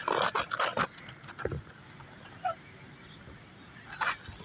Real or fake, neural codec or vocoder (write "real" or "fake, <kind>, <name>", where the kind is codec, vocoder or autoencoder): real